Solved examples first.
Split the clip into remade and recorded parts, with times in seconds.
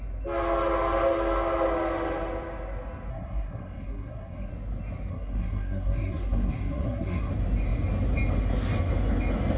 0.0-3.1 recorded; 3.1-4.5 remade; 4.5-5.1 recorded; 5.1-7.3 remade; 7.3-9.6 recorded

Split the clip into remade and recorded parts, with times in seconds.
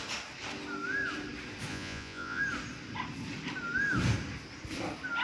0.0-1.7 recorded; 1.7-2.4 remade; 2.4-5.2 recorded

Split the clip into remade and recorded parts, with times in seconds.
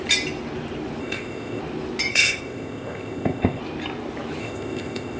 0.0-1.0 recorded; 1.0-1.6 remade; 1.6-2.1 recorded; 2.1-3.6 remade; 3.6-4.4 recorded; 4.4-5.2 remade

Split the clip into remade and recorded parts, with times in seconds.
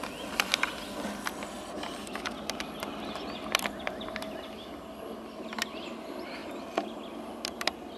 0.0-8.0 recorded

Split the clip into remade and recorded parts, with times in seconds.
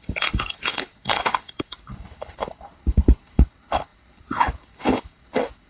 0.0-5.7 remade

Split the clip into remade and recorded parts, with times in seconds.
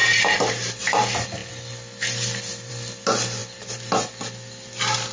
0.0-0.8 remade; 0.8-3.4 recorded; 3.4-4.1 remade; 4.1-5.1 recorded